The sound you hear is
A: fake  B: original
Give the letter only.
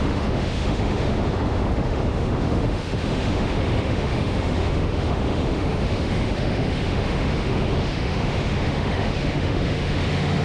A